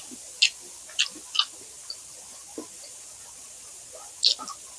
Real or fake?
real